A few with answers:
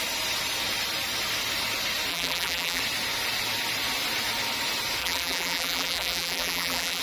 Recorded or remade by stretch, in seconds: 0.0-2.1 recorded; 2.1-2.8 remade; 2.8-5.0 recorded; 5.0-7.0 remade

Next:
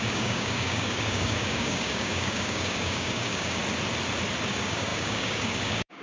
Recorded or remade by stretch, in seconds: 0.0-3.6 remade; 3.6-4.5 recorded; 4.5-6.0 remade

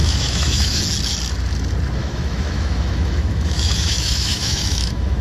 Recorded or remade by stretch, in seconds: 0.0-0.8 remade; 0.8-2.0 recorded; 2.0-5.2 remade

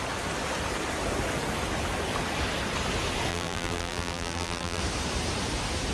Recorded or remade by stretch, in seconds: 0.0-3.3 recorded; 3.3-4.8 remade; 4.8-5.9 recorded

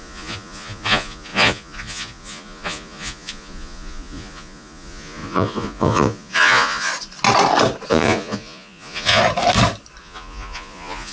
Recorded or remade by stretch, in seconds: 0.0-6.9 remade; 6.9-7.9 recorded; 7.9-9.2 remade; 9.2-10.0 recorded; 10.0-11.1 remade